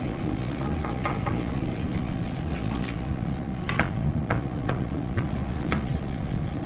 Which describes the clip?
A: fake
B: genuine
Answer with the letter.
A